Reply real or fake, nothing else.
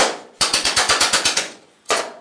fake